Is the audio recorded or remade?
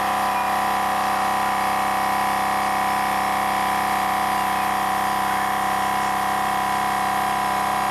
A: recorded